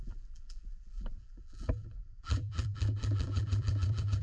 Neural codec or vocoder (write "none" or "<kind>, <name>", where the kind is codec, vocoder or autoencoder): vocoder, BigVGAN v2